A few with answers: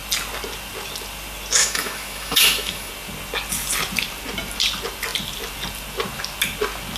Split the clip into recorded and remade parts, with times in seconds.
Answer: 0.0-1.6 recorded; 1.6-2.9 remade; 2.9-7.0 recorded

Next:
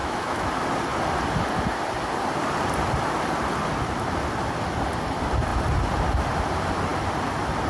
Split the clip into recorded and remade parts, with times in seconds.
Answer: 0.0-0.5 remade; 0.5-7.7 recorded

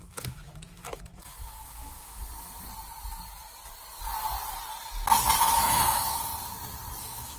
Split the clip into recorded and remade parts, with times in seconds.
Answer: 0.0-2.2 remade; 2.2-5.4 recorded; 5.4-6.3 remade; 6.3-7.0 recorded; 7.0-7.4 remade

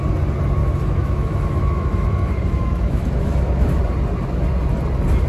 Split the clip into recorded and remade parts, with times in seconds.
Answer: 0.0-0.6 recorded; 0.6-3.8 remade; 3.8-5.3 recorded

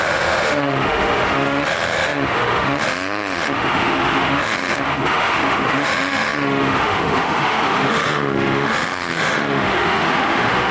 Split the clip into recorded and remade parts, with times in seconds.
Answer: 0.0-10.7 remade

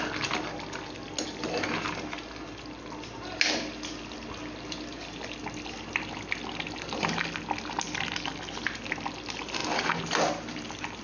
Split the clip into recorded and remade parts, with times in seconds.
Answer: 0.0-11.0 recorded

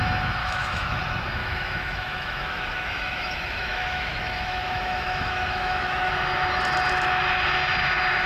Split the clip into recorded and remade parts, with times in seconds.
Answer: 0.0-0.4 recorded; 0.4-1.0 remade; 1.0-1.4 recorded; 1.4-6.1 remade; 6.1-8.3 recorded

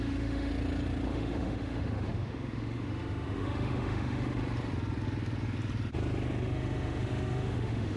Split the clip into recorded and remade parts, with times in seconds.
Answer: 0.0-0.5 remade; 0.5-1.1 recorded; 1.1-4.4 remade; 4.4-6.4 recorded; 6.4-8.0 remade